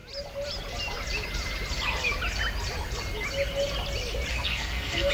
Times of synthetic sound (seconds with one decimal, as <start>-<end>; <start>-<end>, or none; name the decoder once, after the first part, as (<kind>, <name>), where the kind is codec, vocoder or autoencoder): 4.3-5.1 (codec, SNAC)